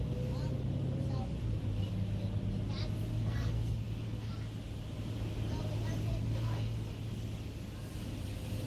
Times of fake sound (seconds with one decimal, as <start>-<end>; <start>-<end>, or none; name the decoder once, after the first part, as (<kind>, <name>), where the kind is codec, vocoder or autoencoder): 3.1-4.3 (codec, SNAC); 6.1-6.9